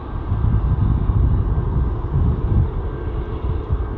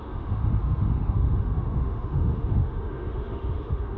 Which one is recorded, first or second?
first